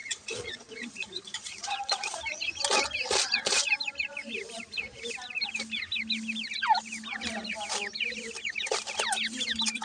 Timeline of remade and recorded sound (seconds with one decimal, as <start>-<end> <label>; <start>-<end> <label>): 0.0-2.2 remade; 2.2-9.8 recorded